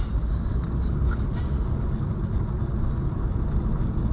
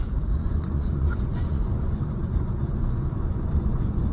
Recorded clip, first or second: first